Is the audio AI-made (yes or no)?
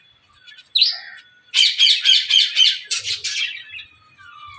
no